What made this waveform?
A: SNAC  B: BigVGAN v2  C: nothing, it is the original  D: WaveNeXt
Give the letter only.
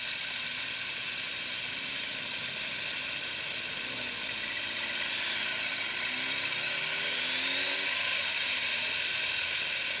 C